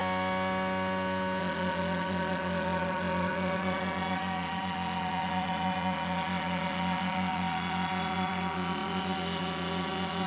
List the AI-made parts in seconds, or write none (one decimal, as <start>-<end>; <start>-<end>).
1.4-10.3